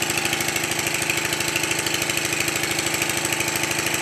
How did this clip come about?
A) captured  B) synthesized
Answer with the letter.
A